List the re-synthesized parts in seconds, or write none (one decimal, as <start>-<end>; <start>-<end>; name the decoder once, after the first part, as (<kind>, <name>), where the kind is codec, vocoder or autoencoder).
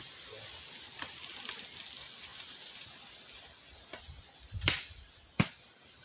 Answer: none